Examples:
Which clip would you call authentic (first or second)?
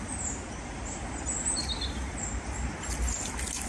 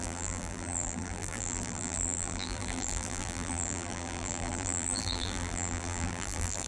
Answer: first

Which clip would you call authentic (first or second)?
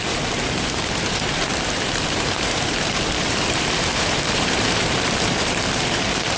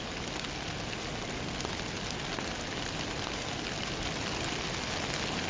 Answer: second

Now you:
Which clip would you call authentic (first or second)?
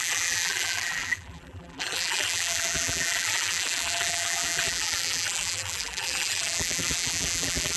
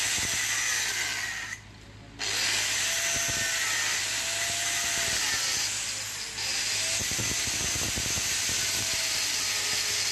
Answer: second